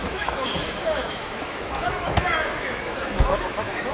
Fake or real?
fake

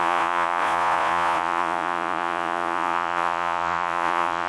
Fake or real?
fake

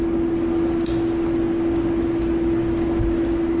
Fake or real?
real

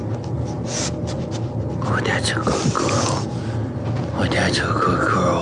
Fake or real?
real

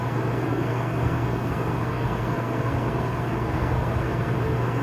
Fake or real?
fake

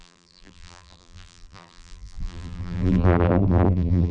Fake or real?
fake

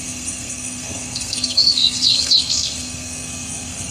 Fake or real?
fake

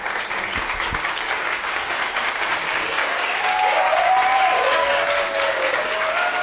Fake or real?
fake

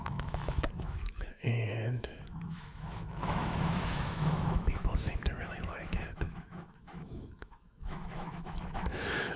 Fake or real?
fake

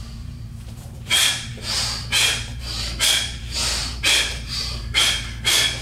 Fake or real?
fake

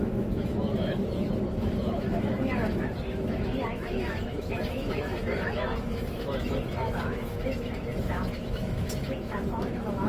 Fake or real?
fake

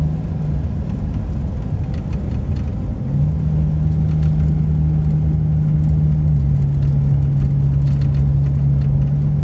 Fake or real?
real